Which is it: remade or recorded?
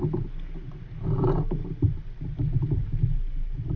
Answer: recorded